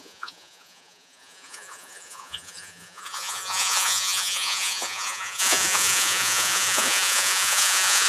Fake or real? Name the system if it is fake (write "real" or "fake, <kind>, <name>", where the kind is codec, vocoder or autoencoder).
fake, vocoder, Vocos